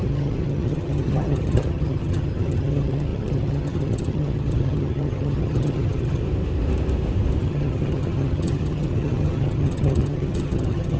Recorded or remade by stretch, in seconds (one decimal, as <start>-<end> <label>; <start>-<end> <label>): 0.0-6.2 remade; 6.2-7.4 recorded; 7.4-11.0 remade

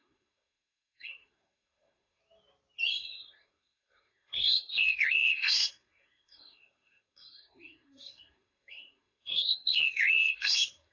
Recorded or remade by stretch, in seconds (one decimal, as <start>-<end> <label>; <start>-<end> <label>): 0.0-2.2 remade; 2.2-2.9 recorded; 2.9-10.9 remade

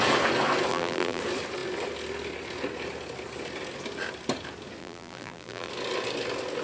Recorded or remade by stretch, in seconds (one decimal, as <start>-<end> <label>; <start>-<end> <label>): 0.0-0.7 recorded; 0.7-1.2 remade; 1.2-4.8 recorded; 4.8-5.7 remade; 5.7-6.6 recorded